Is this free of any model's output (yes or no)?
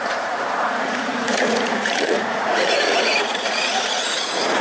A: no